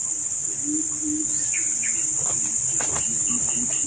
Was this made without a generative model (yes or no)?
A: yes